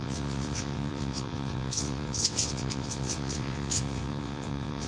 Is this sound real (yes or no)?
no